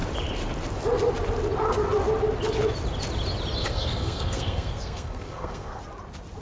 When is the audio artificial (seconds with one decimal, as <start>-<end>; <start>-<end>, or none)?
3.6-5.8